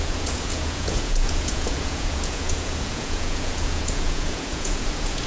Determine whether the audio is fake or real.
fake